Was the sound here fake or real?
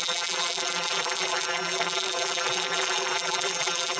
fake